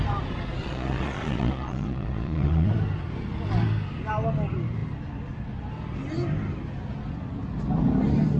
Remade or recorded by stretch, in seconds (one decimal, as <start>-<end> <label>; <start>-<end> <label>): 0.0-0.6 recorded; 0.6-2.7 remade; 2.7-8.4 recorded